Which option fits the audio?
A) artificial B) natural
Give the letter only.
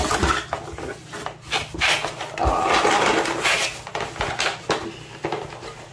B